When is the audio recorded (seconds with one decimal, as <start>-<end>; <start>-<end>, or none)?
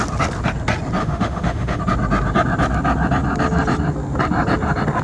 0.0-1.0; 1.8-5.0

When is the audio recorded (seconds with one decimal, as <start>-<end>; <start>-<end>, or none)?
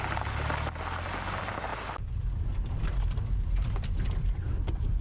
0.0-5.0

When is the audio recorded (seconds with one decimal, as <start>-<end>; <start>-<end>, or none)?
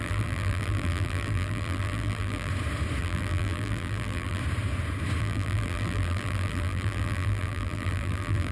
2.5-3.0; 4.4-5.2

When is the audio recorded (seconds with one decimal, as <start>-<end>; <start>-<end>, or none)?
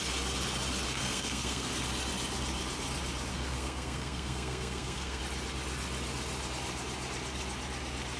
0.0-1.0; 1.7-3.3; 5.2-8.2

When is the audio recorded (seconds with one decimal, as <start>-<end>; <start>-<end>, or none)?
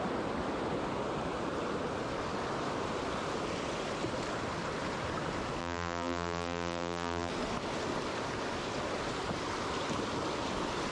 0.0-5.6; 7.3-10.9